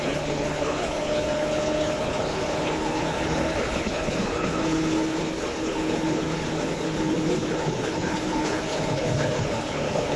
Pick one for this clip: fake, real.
fake